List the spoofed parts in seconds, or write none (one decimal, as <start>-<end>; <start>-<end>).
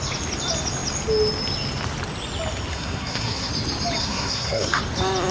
2.7-3.5; 4.0-4.8